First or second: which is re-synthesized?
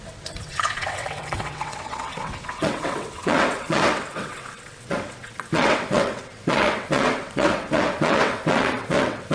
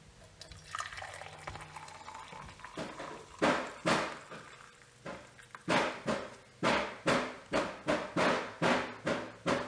first